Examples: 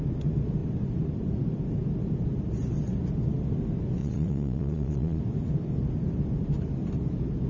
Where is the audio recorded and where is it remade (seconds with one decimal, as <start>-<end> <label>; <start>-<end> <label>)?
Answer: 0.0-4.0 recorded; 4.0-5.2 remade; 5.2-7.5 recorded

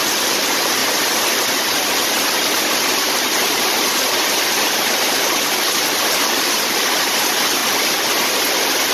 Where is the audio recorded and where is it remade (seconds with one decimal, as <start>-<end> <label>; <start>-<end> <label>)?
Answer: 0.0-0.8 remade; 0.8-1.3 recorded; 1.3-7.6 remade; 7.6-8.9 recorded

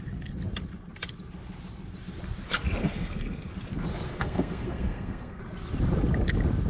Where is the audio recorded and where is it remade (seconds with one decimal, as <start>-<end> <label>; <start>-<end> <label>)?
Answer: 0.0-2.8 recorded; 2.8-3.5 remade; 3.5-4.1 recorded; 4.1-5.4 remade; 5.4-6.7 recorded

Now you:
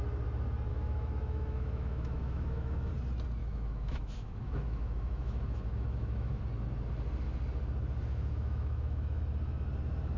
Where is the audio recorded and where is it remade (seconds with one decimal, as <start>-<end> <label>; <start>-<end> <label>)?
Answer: 0.0-0.7 recorded; 0.7-2.9 remade; 2.9-3.4 recorded; 3.4-6.4 remade; 6.4-8.1 recorded; 8.1-9.2 remade; 9.2-10.2 recorded

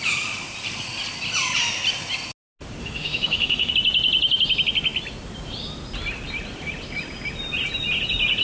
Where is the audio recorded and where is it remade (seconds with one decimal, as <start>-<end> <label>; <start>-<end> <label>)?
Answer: 0.0-2.8 recorded; 2.8-3.7 remade; 3.7-8.4 recorded

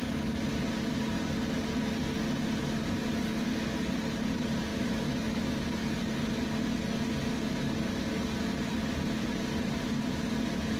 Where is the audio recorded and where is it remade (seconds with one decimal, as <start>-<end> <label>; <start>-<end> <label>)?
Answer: 0.0-4.7 recorded; 4.7-5.5 remade; 5.5-10.8 recorded

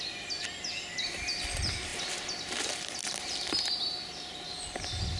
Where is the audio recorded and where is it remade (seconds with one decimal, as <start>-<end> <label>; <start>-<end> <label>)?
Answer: 0.0-5.2 recorded